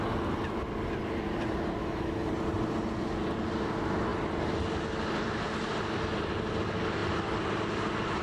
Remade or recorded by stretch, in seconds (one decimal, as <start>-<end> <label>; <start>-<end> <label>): 0.0-1.8 recorded; 1.8-2.3 remade; 2.3-8.2 recorded